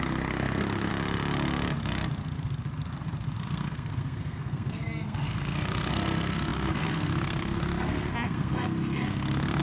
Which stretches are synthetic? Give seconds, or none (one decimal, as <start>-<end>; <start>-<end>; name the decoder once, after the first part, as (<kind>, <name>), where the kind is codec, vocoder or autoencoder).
0.0-0.9 (codec, SNAC); 3.4-9.6